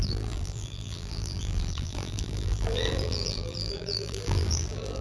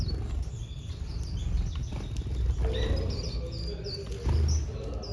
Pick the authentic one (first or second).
second